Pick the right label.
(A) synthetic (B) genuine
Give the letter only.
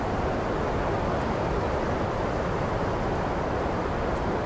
B